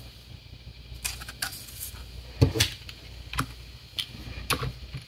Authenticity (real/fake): real